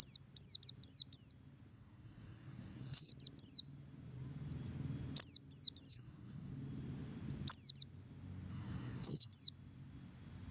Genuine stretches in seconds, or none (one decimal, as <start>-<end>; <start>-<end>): 0.0-1.7; 3.1-5.9; 6.5-8.5; 9.3-10.5